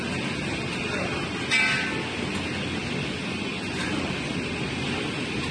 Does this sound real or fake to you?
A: real